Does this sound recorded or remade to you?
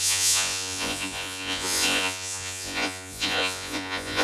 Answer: remade